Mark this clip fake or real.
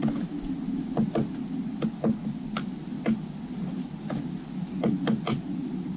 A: real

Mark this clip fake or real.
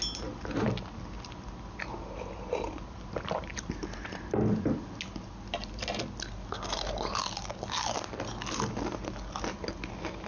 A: real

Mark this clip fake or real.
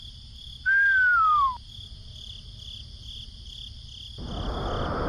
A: real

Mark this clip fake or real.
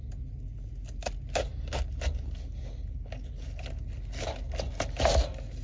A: real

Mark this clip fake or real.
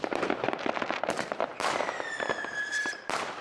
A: fake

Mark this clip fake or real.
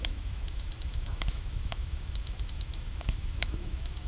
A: fake